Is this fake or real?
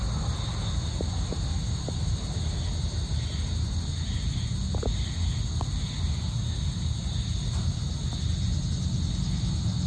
real